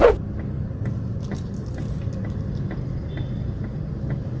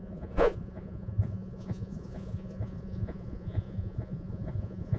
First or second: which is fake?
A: second